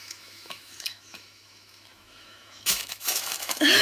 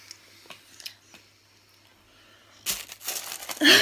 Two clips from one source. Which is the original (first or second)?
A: second